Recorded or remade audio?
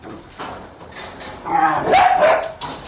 remade